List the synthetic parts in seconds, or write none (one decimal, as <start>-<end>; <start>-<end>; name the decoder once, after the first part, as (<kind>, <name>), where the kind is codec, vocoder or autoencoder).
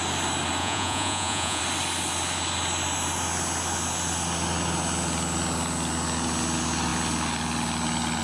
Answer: 0.6-1.6 (vocoder, Vocos)